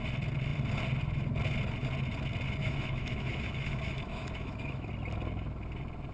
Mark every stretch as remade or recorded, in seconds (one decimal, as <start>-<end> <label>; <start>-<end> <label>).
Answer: 0.0-2.6 recorded; 2.6-4.9 remade; 4.9-6.1 recorded